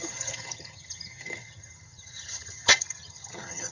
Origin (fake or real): fake